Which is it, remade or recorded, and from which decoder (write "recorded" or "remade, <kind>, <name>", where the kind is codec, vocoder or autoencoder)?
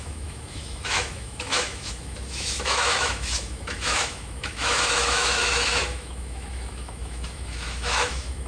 remade, autoencoder, DAC-VAE